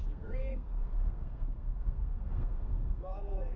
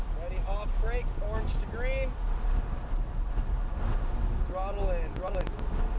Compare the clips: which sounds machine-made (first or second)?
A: first